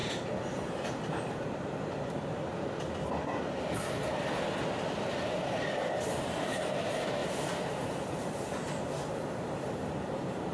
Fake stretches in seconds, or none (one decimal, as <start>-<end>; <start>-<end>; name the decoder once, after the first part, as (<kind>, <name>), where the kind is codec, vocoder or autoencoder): 0.0-2.5 (vocoder, BigVGAN v2); 6.8-7.2; 9.5-10.5